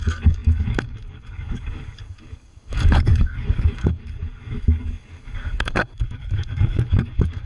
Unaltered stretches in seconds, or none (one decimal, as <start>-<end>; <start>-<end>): none

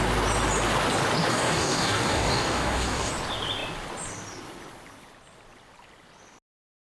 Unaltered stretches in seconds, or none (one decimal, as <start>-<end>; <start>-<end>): 0.0-1.3; 3.1-6.9

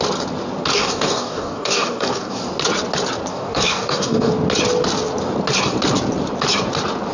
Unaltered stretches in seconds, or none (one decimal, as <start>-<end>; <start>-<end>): 0.0-0.7; 2.4-3.3; 4.3-7.1

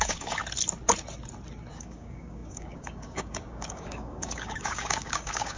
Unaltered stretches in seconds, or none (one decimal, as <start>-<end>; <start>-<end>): 0.4-1.7

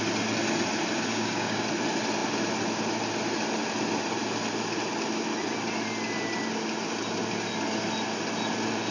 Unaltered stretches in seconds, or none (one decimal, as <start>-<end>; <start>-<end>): 0.0-1.1; 1.6-8.9

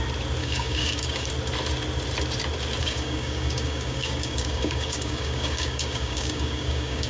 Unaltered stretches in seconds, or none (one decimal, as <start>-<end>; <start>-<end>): 0.0-0.4; 1.3-2.8

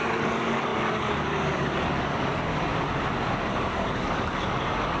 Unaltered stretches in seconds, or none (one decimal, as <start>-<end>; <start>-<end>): 2.7-3.5